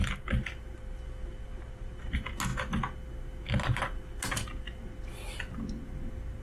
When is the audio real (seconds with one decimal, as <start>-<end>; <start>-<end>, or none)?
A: 0.0-6.4